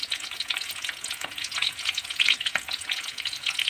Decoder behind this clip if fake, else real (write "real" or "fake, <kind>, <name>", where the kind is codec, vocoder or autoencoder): fake, vocoder, Vocos